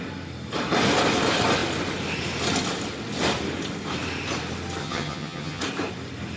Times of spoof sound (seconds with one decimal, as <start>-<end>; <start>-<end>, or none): 4.8-5.6